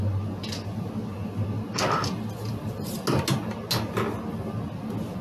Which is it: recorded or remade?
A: recorded